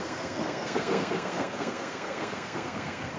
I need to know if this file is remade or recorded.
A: remade